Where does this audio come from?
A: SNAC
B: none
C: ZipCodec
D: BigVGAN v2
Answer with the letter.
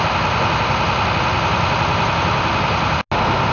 B